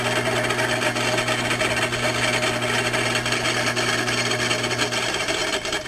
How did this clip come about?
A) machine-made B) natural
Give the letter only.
B